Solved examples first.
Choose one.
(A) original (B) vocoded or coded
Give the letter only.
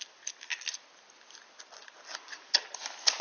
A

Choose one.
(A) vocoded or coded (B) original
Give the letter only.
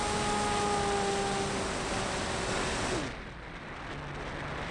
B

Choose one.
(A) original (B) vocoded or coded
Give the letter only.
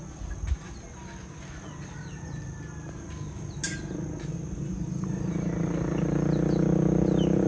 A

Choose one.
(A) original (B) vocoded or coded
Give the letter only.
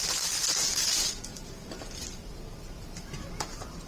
A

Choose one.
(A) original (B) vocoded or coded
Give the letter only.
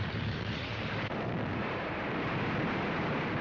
B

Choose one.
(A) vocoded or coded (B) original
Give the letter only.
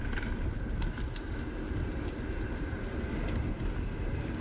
B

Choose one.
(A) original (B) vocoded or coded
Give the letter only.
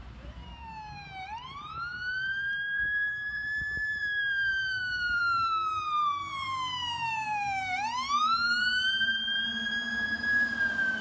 B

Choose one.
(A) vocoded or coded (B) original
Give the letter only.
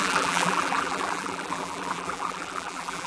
A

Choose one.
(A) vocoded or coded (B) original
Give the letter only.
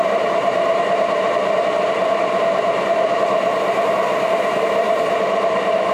A